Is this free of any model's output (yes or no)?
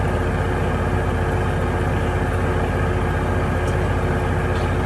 yes